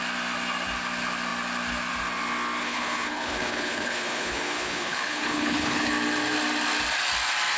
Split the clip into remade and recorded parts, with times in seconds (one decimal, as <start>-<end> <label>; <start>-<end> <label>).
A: 0.0-2.6 recorded; 2.6-5.9 remade; 5.9-7.6 recorded